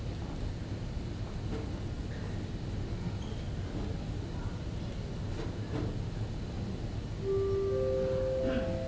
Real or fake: real